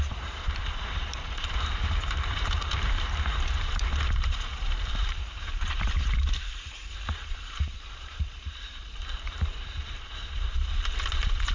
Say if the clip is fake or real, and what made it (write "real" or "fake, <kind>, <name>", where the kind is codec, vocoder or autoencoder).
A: fake, vocoder, BigVGAN v2